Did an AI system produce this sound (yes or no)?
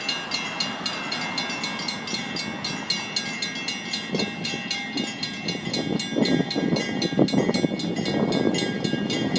no